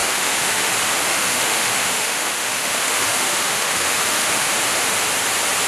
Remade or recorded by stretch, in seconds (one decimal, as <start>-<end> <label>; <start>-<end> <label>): 0.0-0.7 remade; 0.7-1.1 recorded; 1.1-4.5 remade; 4.5-5.7 recorded